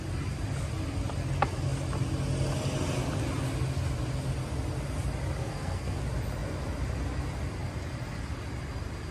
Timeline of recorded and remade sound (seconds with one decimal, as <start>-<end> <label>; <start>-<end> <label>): 0.0-5.4 recorded; 5.4-6.0 remade; 6.0-9.1 recorded